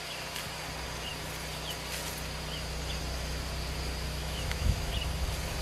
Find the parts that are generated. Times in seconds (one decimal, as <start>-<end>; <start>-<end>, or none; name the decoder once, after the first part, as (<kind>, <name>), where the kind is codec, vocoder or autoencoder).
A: 4.2-4.9 (autoencoder, DAC-VAE)